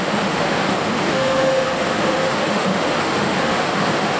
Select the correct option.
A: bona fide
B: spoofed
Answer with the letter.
B